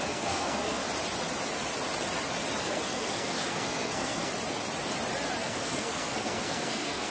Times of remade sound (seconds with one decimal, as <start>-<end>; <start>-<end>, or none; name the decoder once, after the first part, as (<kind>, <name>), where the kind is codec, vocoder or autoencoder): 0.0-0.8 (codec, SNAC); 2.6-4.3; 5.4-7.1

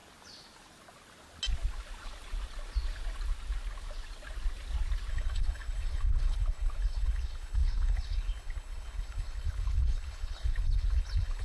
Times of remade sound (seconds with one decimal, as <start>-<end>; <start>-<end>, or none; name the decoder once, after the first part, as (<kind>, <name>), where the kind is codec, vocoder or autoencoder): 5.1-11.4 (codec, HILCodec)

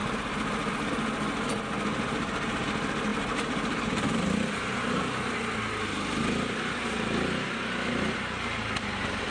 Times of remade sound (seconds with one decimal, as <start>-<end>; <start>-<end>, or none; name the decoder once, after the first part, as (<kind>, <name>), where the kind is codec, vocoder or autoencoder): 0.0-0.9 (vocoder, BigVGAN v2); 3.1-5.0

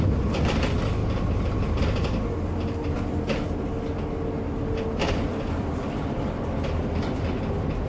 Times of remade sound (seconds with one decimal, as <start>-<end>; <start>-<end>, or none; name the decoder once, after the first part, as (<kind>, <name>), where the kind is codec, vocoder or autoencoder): none